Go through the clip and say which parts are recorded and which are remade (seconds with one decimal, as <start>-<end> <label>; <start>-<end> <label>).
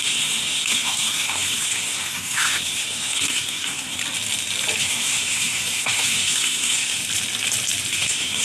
0.0-4.0 remade; 4.0-4.8 recorded; 4.8-7.0 remade; 7.0-7.9 recorded; 7.9-8.4 remade